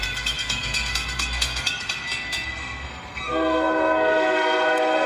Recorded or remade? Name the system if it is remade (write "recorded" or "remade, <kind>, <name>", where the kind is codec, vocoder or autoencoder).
remade, codec, SNAC